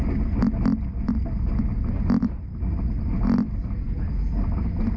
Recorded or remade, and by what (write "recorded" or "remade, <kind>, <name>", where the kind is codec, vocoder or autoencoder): recorded